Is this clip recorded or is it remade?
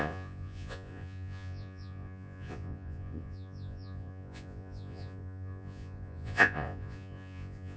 remade